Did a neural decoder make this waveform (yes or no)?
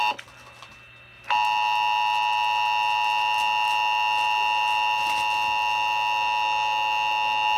no